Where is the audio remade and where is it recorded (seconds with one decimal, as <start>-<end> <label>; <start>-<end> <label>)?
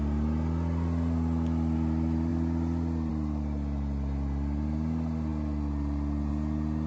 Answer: 0.0-6.9 recorded